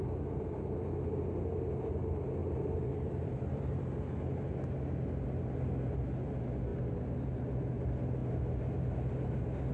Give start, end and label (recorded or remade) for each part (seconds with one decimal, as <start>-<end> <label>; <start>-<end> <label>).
0.0-2.4 recorded; 2.4-3.8 remade; 3.8-9.7 recorded